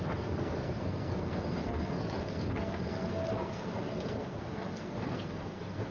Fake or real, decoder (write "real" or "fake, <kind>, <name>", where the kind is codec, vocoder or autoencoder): fake, codec, SNAC